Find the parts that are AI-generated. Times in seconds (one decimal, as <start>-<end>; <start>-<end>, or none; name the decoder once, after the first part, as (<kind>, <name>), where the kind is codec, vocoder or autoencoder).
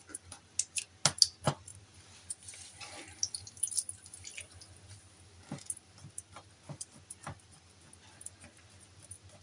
none